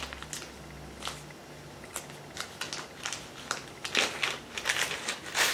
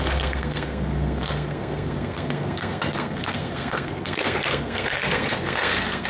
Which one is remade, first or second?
second